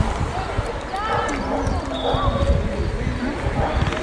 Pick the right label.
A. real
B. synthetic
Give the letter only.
A